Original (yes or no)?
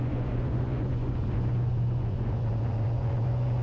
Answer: no